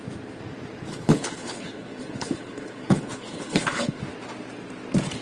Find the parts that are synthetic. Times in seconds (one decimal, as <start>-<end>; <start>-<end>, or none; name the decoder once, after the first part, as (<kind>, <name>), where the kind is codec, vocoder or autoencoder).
0.9-4.0 (codec, HILCodec)